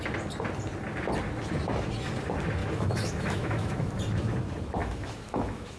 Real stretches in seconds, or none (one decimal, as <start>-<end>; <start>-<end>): 0.0-2.6; 4.0-4.8